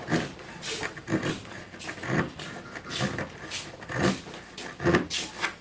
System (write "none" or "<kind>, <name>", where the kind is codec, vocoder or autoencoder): none